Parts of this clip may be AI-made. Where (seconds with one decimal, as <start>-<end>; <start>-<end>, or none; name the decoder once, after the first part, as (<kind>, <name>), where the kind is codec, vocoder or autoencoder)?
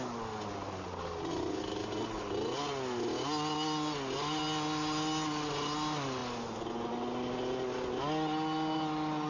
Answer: none